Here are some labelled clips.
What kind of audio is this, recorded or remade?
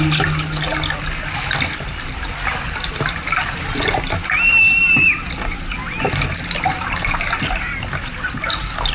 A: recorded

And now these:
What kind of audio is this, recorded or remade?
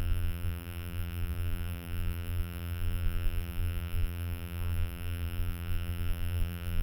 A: remade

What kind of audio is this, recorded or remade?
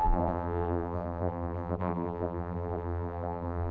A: remade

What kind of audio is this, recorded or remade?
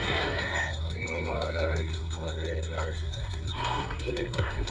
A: remade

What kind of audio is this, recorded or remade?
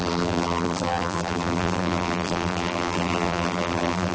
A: remade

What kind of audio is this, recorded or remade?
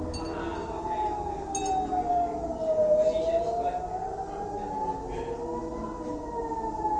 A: recorded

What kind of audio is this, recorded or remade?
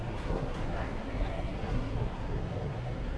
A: remade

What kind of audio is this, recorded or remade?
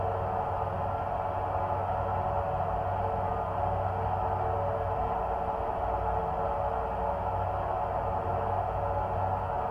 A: recorded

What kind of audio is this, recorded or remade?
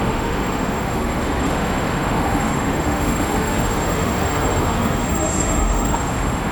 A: remade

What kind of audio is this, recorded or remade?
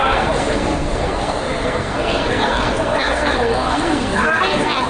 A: remade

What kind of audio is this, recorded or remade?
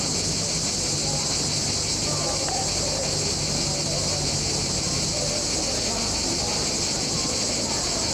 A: recorded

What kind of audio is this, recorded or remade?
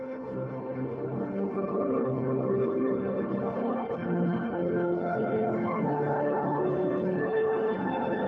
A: remade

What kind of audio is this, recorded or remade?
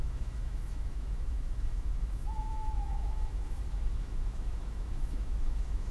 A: remade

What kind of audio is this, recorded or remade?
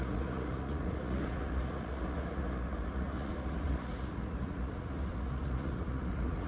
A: remade